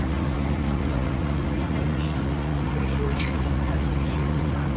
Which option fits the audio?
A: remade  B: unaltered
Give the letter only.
A